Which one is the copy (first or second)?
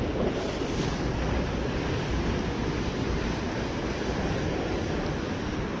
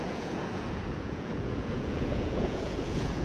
second